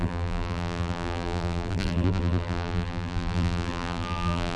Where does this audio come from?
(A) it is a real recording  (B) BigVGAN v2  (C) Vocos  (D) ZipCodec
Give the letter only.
B